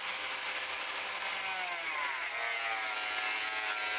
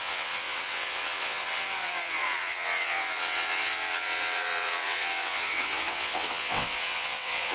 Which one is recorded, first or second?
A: first